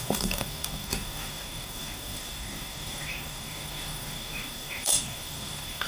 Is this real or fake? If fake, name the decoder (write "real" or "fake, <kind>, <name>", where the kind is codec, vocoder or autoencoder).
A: fake, codec, DAC